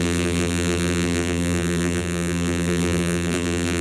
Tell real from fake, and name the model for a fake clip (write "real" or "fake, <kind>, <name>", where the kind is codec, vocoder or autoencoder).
fake, vocoder, BigVGAN v2